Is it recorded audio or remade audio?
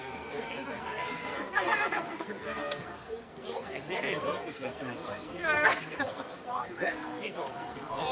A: remade